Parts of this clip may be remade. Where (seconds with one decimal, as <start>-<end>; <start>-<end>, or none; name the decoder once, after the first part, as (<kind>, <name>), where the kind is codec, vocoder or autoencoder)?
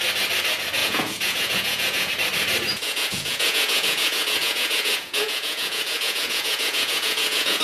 0.8-2.1 (vocoder, Vocos); 2.7-7.6